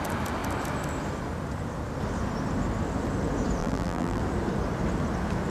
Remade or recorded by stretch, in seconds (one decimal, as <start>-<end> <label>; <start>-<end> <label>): 0.0-3.6 recorded; 3.6-4.2 remade; 4.2-5.5 recorded